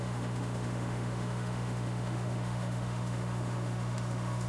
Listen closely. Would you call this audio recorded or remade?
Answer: remade